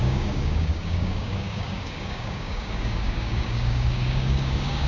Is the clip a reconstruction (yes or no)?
yes